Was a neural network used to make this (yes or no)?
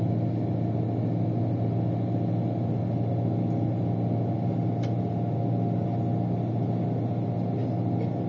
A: no